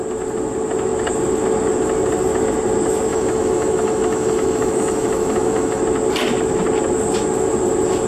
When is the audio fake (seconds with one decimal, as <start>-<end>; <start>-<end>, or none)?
3.1-5.8